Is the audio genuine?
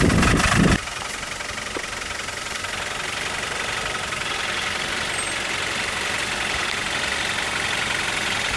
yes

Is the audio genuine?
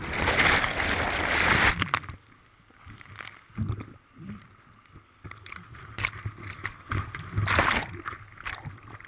yes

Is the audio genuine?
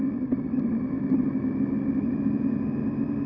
yes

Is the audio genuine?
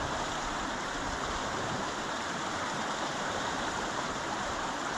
no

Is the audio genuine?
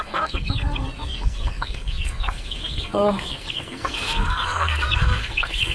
no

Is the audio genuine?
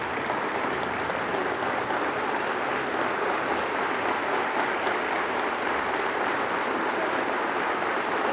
yes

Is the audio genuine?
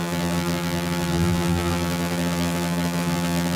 no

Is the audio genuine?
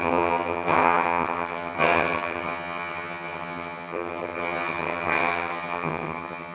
no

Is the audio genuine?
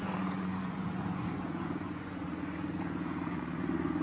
no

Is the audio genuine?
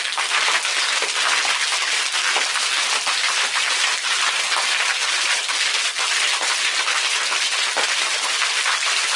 yes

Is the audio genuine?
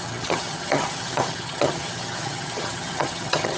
no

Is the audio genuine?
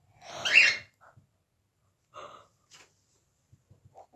yes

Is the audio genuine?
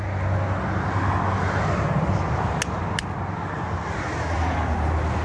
yes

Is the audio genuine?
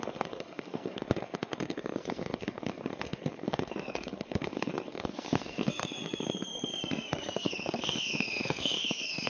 no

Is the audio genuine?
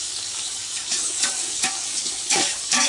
no